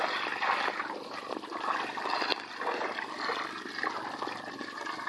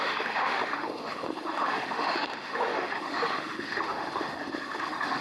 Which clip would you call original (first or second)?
first